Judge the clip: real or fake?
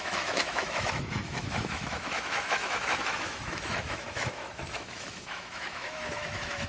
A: fake